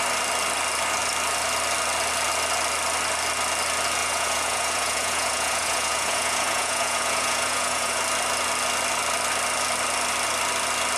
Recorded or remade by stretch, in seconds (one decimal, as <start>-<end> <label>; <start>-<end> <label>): 0.0-4.0 recorded; 4.0-8.0 remade; 8.0-11.0 recorded